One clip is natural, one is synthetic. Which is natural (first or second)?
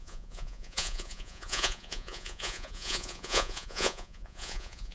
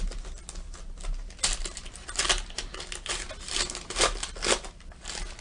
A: second